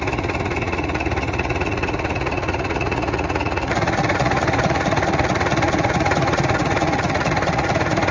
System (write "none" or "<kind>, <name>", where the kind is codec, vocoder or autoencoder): vocoder, Vocos